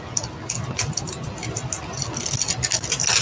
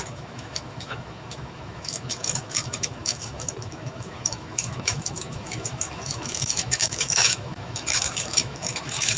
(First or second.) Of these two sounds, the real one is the first